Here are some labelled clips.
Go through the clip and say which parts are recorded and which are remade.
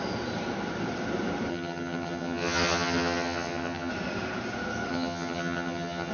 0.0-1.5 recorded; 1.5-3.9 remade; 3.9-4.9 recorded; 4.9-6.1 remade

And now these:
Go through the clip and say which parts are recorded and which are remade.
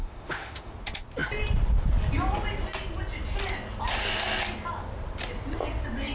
0.0-0.7 remade; 0.7-6.1 recorded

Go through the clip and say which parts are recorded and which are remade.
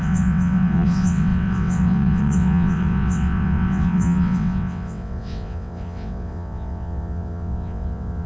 0.0-8.3 remade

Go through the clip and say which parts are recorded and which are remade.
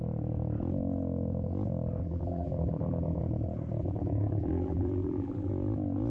0.0-2.0 recorded; 2.0-3.2 remade; 3.2-3.8 recorded; 3.8-5.5 remade; 5.5-6.1 recorded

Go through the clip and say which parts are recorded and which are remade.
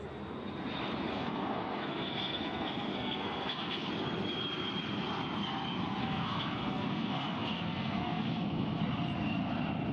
0.0-1.1 recorded; 1.1-3.9 remade; 3.9-6.0 recorded; 6.0-8.8 remade; 8.8-9.9 recorded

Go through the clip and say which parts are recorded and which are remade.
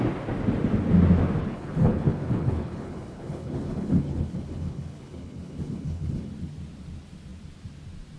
0.0-1.4 recorded; 1.4-6.3 remade; 6.3-8.2 recorded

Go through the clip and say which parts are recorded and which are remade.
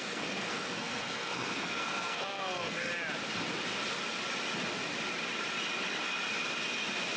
0.0-2.9 remade; 2.9-7.2 recorded